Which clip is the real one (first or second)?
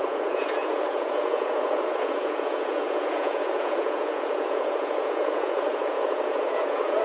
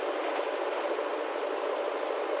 second